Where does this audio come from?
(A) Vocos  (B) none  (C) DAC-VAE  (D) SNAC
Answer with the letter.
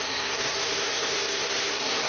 D